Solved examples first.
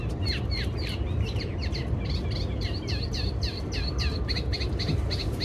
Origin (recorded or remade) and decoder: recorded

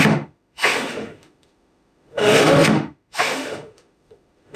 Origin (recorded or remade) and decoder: remade, autoencoder, DAC-VAE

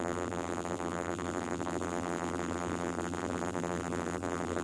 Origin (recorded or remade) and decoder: remade, vocoder, BigVGAN v2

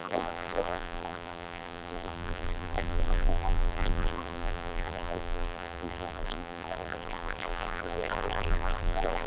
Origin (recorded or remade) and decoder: remade, vocoder, BigVGAN v2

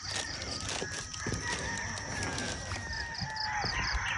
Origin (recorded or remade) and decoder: recorded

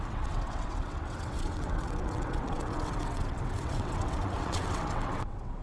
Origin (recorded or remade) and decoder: remade, vocoder, WaveNeXt